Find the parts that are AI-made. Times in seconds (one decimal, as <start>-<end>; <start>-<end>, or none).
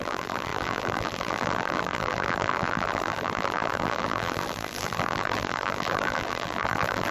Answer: 0.0-7.1